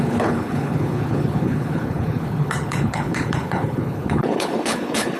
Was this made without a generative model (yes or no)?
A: no